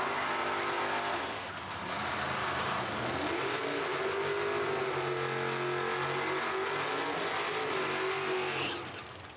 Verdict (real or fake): real